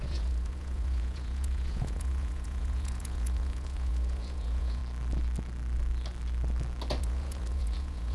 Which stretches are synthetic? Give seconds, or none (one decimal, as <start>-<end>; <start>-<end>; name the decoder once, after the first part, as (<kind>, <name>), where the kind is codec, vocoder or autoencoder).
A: 0.0-4.8 (vocoder, Vocos); 7.0-8.1